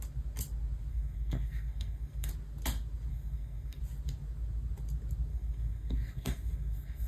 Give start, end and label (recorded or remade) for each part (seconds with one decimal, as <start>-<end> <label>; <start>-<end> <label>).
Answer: 0.0-0.9 recorded; 0.9-2.3 remade; 2.3-3.1 recorded; 3.1-3.8 remade; 3.8-5.3 recorded; 5.3-7.1 remade